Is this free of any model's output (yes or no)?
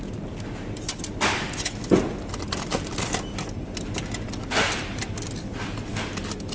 yes